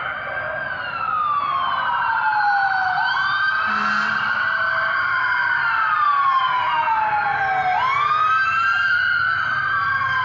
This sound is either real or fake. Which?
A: real